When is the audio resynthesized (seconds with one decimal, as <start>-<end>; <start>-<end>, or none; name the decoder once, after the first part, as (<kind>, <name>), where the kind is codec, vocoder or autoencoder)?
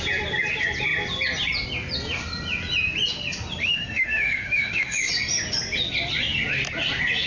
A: 3.6-5.1 (autoencoder, DAC-VAE)